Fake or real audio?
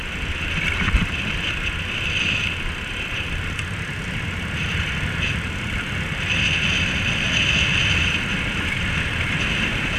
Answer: real